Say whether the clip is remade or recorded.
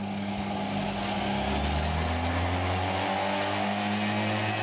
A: recorded